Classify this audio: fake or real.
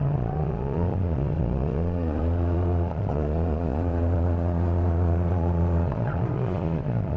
fake